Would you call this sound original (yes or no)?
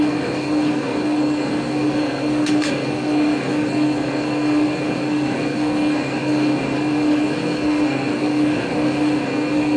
no